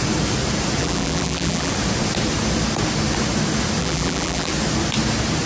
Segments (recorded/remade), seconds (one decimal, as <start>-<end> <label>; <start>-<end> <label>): 0.0-0.8 recorded; 0.8-1.7 remade; 1.7-3.8 recorded; 3.8-4.5 remade; 4.5-5.5 recorded